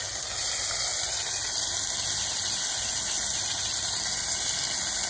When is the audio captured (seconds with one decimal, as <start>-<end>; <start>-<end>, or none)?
0.0-5.1